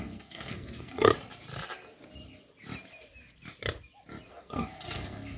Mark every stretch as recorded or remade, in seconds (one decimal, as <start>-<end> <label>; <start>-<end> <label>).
0.0-1.1 remade; 1.1-4.3 recorded; 4.3-5.4 remade